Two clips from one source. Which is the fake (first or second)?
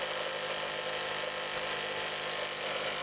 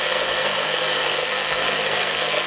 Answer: second